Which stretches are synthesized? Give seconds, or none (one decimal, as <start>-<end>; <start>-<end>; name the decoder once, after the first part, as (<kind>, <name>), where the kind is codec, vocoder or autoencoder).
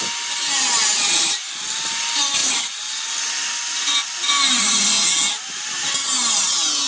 0.8-1.5 (vocoder, BigVGAN v2); 2.4-3.1